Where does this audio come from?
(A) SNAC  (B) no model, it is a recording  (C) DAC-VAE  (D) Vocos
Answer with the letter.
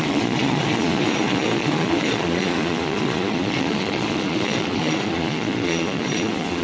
D